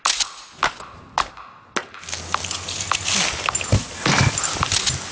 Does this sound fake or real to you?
real